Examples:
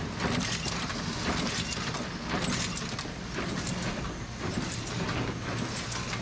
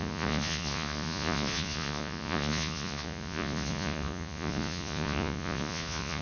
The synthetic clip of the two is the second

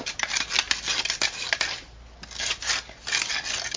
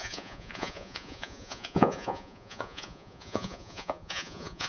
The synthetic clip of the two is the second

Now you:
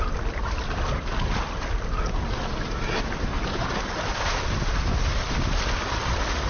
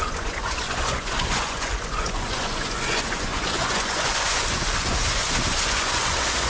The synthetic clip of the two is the second